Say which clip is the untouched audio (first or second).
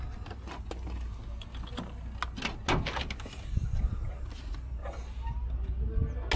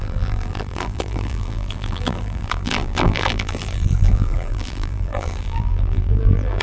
first